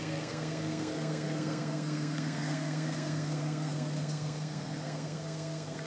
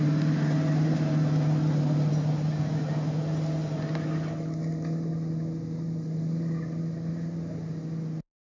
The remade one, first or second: first